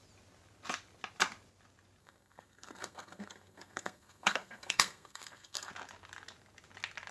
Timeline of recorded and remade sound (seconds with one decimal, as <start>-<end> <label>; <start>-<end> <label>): 0.0-2.0 recorded; 2.0-5.7 remade; 5.7-7.1 recorded